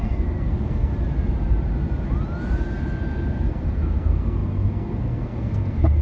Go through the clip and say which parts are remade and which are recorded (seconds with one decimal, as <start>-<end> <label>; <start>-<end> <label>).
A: 0.0-0.9 remade; 0.9-3.5 recorded; 3.5-6.0 remade